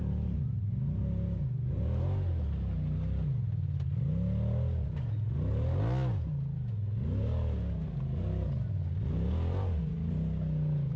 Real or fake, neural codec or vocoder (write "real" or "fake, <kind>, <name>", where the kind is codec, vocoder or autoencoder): real